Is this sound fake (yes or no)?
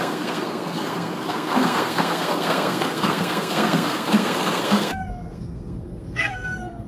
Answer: yes